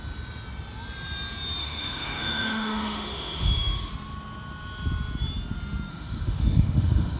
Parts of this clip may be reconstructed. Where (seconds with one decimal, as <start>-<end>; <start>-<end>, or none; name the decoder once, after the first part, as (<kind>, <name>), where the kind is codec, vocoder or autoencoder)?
1.6-3.9 (autoencoder, DAC-VAE); 5.9-7.2